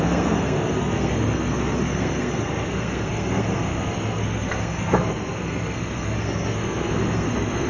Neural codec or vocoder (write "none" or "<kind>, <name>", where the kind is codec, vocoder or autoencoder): codec, SNAC